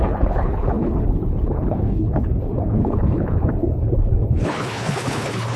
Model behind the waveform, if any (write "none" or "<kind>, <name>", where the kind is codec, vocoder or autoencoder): codec, HILCodec